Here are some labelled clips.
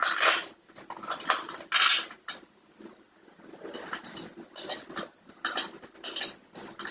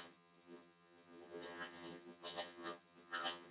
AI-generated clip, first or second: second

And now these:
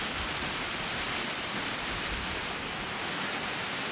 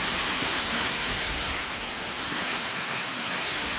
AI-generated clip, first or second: second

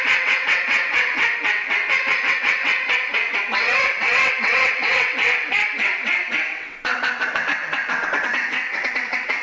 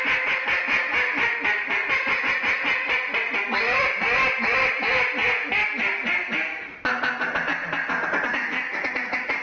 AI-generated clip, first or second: first